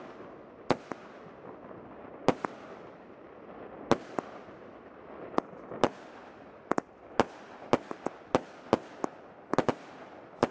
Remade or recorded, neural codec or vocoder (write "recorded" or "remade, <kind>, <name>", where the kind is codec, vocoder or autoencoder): recorded